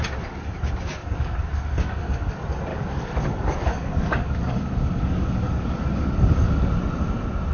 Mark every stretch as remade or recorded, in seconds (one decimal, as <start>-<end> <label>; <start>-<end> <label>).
0.0-1.0 recorded; 1.0-2.3 remade; 2.3-2.7 recorded; 2.7-6.7 remade; 6.7-7.5 recorded